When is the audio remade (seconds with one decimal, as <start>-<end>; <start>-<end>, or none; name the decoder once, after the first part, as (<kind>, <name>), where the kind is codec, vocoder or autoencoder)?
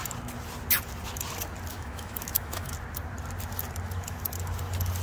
1.7-2.7 (autoencoder, DAC-VAE)